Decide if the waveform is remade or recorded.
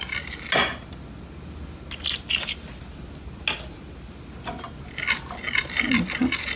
recorded